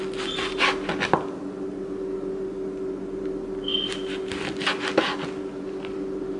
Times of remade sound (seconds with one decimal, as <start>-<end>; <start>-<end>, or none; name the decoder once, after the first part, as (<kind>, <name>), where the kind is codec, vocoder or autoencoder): none